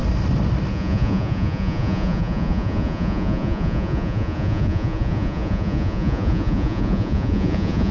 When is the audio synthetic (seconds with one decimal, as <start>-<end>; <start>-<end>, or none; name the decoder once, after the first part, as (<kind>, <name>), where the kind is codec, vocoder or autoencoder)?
0.7-7.9 (vocoder, Vocos)

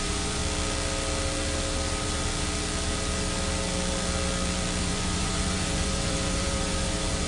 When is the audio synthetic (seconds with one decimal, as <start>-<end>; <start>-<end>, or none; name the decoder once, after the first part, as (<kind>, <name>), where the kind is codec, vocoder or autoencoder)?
0.0-0.4 (vocoder, Vocos); 4.8-7.3

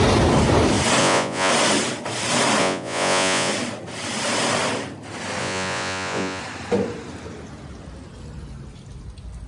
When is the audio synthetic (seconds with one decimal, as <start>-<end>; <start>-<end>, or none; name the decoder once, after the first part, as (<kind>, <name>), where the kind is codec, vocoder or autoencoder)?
1.0-1.5 (vocoder, Vocos); 2.6-3.5; 5.4-6.4

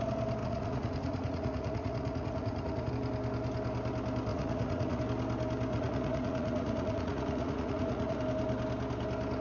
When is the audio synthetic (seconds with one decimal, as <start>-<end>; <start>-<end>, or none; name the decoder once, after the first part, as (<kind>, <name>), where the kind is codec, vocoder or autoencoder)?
0.4-2.9 (vocoder, Vocos); 4.3-5.0; 5.7-8.2

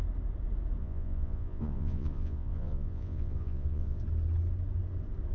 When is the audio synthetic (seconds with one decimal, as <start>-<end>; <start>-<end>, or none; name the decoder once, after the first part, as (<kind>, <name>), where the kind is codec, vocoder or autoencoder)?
0.8-4.0 (vocoder, Vocos)

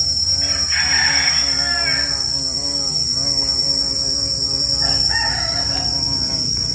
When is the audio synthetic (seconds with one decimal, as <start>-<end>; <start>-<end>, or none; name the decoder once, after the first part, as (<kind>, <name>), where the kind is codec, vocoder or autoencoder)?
none

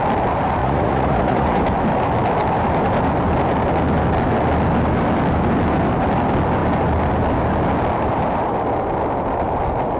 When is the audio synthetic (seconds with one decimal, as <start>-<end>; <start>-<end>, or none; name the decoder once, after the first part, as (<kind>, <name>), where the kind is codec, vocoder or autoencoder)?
0.6-1.6 (vocoder, Vocos)